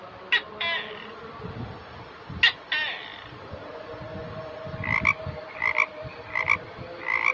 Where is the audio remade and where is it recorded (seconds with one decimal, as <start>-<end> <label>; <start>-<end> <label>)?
0.0-7.3 recorded